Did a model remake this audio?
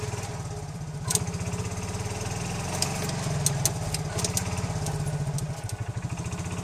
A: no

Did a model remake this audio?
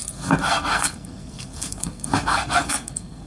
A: yes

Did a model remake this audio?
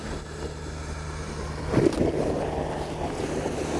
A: no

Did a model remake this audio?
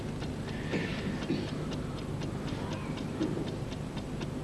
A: no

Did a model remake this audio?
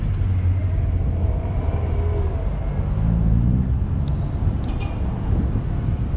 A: no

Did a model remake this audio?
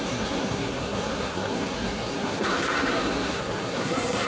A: yes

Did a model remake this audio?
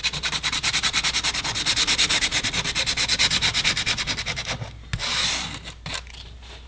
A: no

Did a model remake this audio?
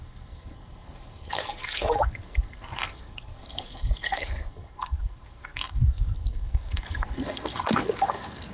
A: yes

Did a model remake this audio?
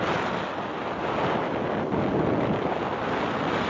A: no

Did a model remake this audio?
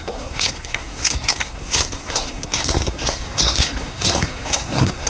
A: yes